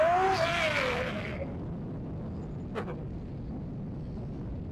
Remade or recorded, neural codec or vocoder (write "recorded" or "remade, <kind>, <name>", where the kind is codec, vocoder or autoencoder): recorded